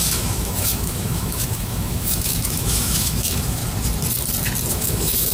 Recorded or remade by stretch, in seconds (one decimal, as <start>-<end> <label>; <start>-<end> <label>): 0.0-3.6 remade; 3.6-4.7 recorded; 4.7-5.3 remade